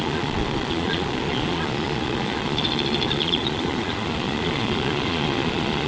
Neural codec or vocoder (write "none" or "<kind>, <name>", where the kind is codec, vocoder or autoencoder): vocoder, Vocos